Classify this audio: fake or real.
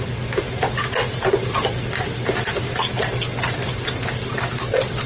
real